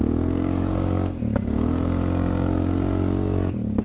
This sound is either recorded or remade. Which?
remade